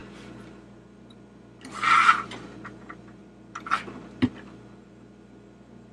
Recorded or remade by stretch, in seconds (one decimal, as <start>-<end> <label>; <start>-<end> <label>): 0.0-5.9 recorded